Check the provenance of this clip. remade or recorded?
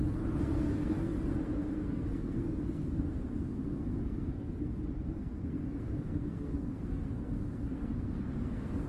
remade